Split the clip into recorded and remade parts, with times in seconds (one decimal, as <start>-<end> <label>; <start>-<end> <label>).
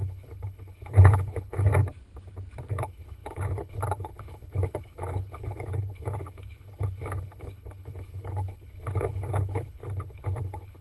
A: 0.0-1.7 remade; 1.7-2.7 recorded; 2.7-10.8 remade